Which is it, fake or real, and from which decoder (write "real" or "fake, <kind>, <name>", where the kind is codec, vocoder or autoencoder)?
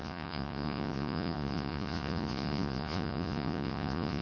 fake, vocoder, Vocos